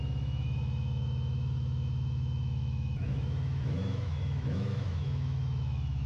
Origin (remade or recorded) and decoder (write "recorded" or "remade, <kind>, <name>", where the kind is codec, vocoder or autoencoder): remade, autoencoder, DAC-VAE